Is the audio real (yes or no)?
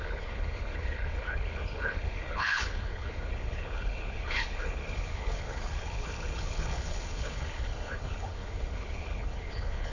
no